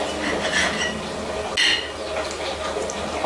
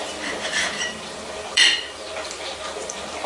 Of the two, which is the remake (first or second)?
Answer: second